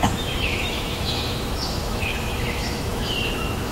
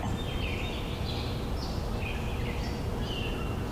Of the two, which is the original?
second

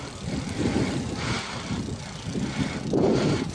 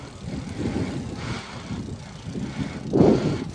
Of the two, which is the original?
second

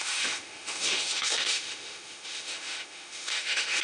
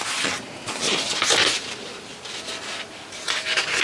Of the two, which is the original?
second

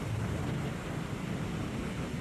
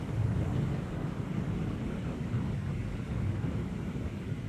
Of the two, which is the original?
first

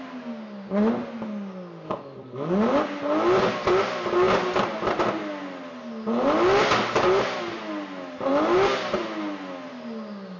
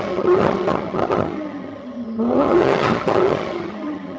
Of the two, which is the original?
first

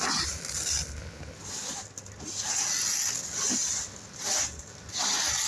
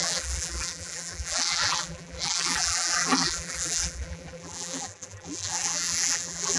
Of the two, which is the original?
first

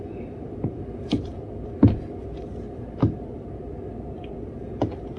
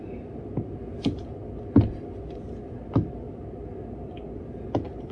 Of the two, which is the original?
second